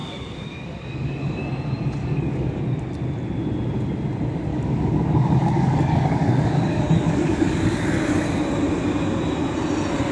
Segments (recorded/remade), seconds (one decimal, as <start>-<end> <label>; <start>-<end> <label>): 0.0-1.4 remade; 1.4-2.0 recorded; 2.0-2.6 remade; 2.6-4.5 recorded; 4.5-7.9 remade; 7.9-10.1 recorded